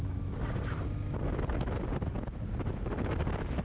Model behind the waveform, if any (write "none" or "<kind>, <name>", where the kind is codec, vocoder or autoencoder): none